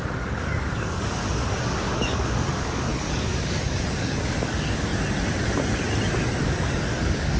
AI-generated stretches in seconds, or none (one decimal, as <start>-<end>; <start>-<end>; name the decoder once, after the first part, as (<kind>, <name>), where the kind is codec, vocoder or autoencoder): 0.0-4.9 (codec, DAC); 6.4-7.4